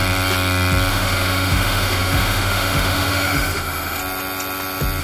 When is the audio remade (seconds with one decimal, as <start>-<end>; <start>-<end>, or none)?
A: 0.9-4.0